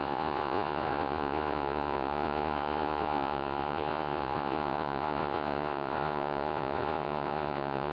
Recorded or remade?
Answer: remade